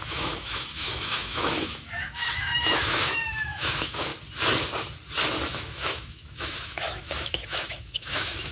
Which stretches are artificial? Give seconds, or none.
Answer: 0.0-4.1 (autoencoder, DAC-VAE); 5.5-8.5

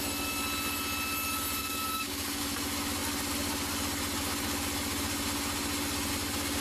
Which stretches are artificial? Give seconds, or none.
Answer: 1.6-2.4 (codec, DAC)

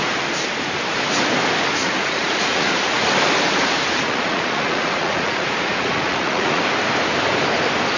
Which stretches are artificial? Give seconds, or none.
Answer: 1.8-3.0 (vocoder, Vocos); 4.0-6.6

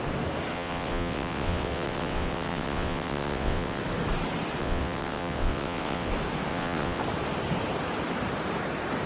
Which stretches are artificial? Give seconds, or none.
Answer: 0.5-3.8 (vocoder, WaveNeXt); 4.6-6.1; 6.5-7.0